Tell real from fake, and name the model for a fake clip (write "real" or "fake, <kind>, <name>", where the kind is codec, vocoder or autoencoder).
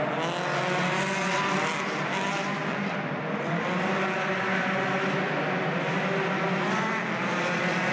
real